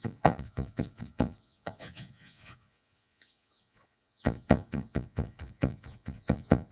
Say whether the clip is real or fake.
fake